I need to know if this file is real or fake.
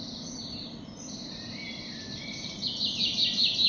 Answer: real